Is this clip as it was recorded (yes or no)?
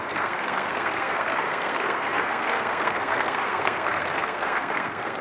no